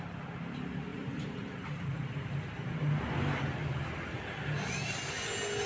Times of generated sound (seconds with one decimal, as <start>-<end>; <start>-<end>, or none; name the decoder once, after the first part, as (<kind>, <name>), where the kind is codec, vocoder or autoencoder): 0.9-3.0 (vocoder, BigVGAN v2)